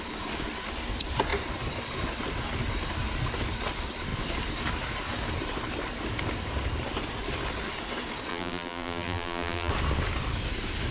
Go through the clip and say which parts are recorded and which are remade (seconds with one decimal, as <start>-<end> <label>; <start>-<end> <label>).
0.0-8.3 recorded; 8.3-9.7 remade; 9.7-10.9 recorded